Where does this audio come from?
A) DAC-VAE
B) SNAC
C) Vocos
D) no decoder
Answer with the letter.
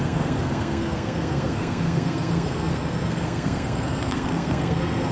B